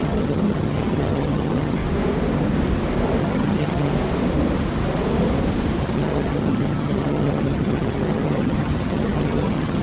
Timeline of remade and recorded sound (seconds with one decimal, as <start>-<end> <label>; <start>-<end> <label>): 0.0-1.8 remade; 1.8-3.2 recorded; 3.2-3.9 remade; 3.9-5.8 recorded; 5.8-9.8 remade